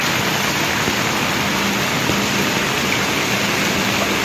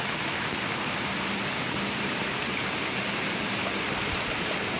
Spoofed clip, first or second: second